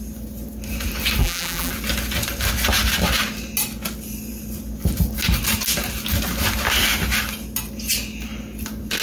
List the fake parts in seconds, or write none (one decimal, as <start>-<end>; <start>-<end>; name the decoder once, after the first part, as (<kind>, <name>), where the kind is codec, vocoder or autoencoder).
1.2-1.7 (vocoder, BigVGAN v2)

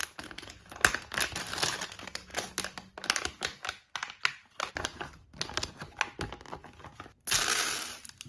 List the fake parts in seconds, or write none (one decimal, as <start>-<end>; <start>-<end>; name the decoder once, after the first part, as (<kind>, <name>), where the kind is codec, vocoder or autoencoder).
0.0-0.5 (vocoder, BigVGAN v2)

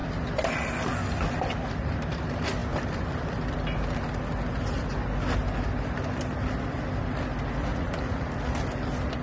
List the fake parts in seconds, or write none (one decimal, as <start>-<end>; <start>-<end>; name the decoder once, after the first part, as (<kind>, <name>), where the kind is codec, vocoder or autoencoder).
7.7-8.3 (vocoder, Vocos)

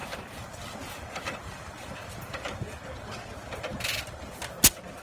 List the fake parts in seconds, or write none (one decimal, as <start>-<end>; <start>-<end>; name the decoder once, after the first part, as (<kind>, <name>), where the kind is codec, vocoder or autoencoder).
0.0-2.8 (vocoder, BigVGAN v2); 3.7-4.4

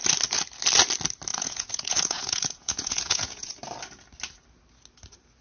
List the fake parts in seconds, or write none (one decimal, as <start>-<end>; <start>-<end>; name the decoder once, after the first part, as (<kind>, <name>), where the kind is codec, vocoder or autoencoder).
1.3-3.5 (vocoder, Vocos)

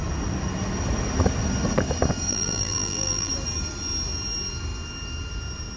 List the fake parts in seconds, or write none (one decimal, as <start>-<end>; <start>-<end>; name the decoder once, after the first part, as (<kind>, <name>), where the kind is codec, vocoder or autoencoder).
2.3-3.3 (vocoder, BigVGAN v2)

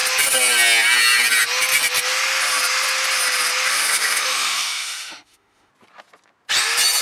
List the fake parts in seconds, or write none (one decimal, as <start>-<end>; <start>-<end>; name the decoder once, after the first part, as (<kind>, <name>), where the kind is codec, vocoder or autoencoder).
3.7-5.7 (autoencoder, DAC-VAE)